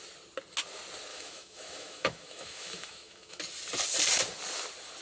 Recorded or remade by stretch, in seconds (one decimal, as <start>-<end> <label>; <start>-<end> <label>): 0.0-1.1 recorded; 1.1-3.4 remade; 3.4-5.0 recorded